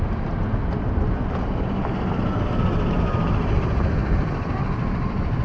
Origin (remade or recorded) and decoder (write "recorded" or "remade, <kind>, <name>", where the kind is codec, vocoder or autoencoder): recorded